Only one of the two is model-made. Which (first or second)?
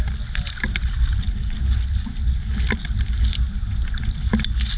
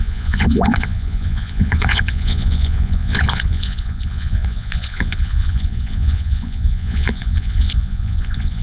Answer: second